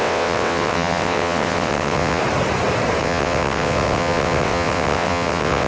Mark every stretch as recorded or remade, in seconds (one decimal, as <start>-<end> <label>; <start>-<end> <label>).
0.0-2.2 remade; 2.2-3.0 recorded; 3.0-5.7 remade